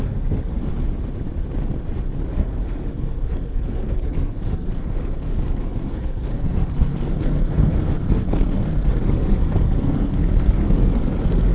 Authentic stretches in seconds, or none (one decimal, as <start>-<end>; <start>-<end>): 0.7-2.3